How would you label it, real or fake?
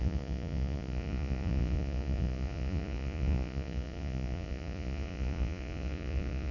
fake